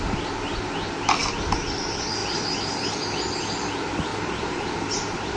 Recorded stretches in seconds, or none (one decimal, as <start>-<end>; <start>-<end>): 0.0-4.1